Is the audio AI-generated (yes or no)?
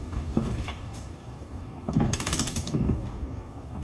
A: yes